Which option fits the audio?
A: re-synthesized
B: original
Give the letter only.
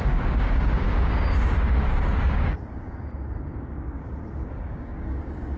A